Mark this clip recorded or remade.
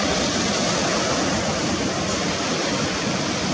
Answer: recorded